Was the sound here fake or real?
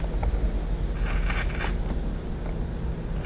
real